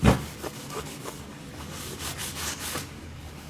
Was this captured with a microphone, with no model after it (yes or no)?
no